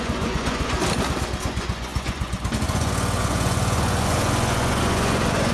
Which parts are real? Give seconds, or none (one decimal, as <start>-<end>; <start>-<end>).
0.8-1.4